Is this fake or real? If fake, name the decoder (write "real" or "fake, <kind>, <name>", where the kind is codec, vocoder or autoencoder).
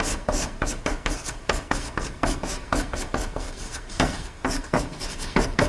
fake, codec, SNAC